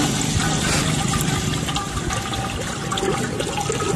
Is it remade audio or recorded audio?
recorded